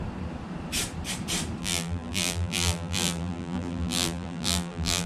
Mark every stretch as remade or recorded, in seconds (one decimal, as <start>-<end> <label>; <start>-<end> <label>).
0.0-1.6 recorded; 1.6-5.1 remade